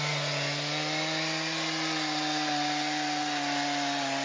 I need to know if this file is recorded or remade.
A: recorded